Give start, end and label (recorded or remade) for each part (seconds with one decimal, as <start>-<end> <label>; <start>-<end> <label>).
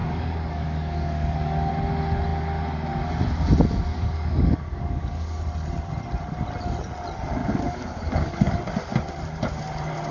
0.0-1.7 remade; 1.7-3.9 recorded; 3.9-5.4 remade; 5.4-7.4 recorded; 7.4-8.5 remade; 8.5-10.1 recorded